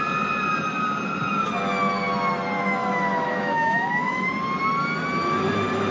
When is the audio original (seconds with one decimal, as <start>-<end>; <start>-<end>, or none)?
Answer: 0.0-2.8; 4.3-5.9